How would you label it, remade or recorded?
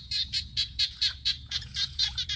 remade